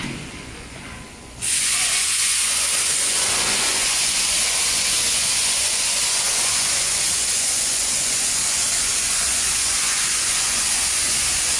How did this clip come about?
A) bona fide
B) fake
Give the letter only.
B